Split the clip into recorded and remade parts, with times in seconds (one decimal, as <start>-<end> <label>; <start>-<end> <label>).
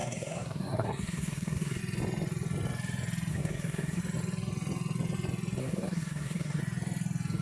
0.0-1.8 remade; 1.8-3.3 recorded; 3.3-4.0 remade; 4.0-5.6 recorded; 5.6-6.6 remade; 6.6-7.4 recorded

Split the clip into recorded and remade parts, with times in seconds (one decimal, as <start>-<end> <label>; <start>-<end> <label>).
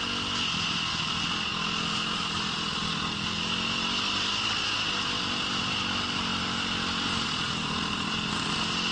0.0-8.9 recorded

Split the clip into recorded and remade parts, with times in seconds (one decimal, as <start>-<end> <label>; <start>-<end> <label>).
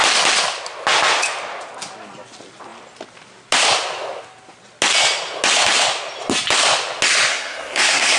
0.0-7.3 recorded; 7.3-8.2 remade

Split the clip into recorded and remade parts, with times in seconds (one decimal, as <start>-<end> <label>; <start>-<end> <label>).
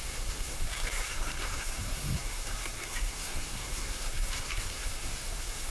0.0-5.7 remade